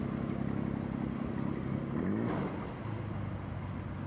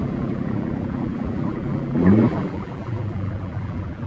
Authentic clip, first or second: first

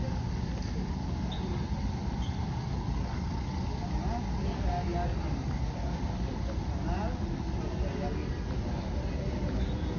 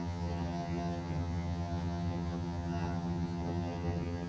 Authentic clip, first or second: first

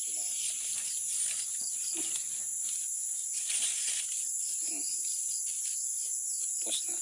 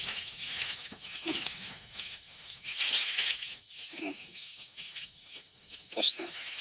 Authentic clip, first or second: first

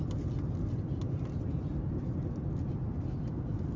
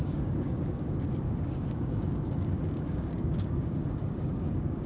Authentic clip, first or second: first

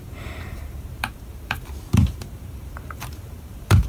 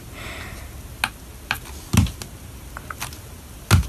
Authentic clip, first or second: second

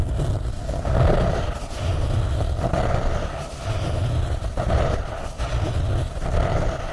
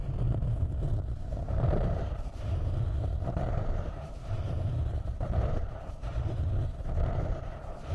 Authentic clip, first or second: first